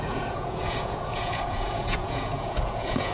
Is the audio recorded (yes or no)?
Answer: no